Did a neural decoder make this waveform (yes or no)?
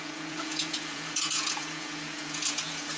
yes